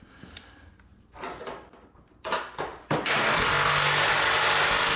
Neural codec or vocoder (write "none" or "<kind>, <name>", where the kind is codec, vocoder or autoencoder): none